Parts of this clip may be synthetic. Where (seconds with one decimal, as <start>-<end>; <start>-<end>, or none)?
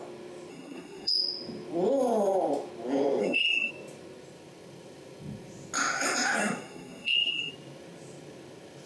0.5-1.1; 3.2-3.7; 6.4-7.5